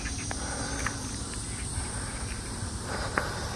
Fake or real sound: real